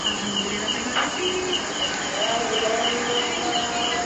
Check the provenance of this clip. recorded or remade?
recorded